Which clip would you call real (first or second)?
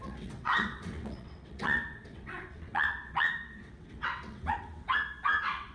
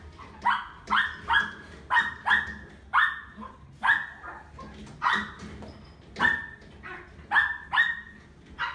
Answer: second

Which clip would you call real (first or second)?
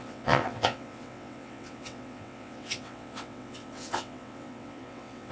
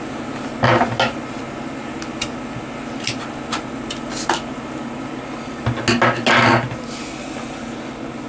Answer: second